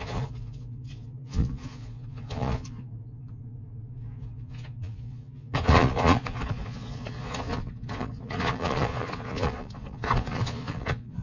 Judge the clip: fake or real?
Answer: fake